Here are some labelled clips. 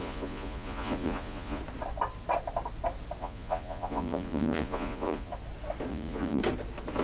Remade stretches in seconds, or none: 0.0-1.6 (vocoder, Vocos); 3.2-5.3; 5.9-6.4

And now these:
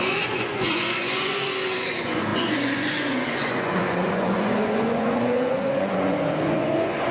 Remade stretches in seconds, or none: 0.0-7.1 (vocoder, Vocos)

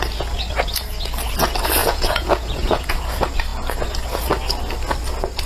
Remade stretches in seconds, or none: 1.8-2.9 (vocoder, Vocos)